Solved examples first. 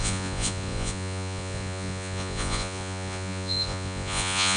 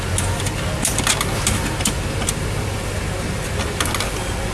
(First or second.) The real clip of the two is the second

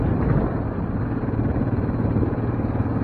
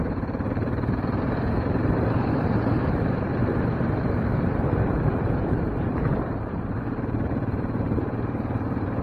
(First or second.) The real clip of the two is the first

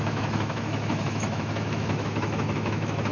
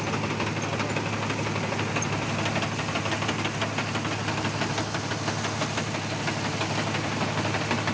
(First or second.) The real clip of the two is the second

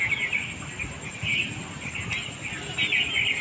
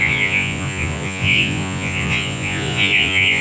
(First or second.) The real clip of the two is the first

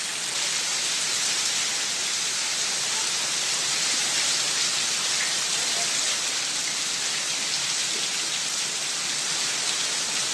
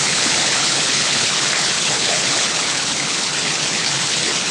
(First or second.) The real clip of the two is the first